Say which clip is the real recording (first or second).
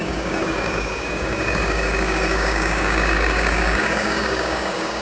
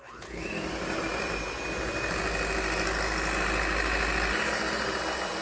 second